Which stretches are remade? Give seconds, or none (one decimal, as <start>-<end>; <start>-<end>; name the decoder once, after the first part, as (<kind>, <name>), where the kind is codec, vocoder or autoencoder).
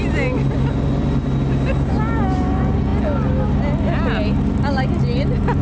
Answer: none